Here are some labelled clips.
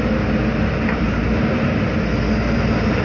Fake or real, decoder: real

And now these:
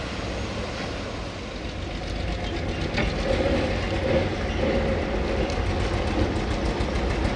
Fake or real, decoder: real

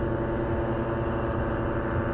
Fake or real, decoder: real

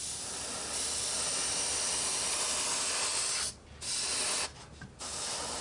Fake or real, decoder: real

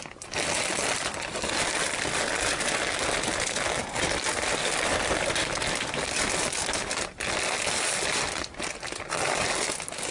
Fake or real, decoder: real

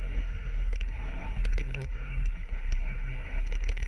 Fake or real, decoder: fake, codec, SNAC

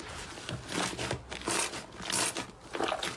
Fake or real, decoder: real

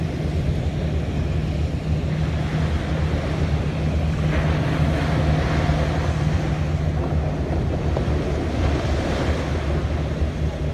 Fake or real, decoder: real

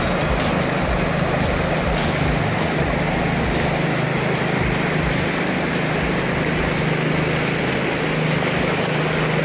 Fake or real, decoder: real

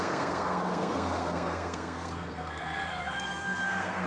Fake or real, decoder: fake, codec, SNAC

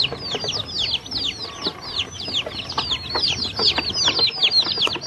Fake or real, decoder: real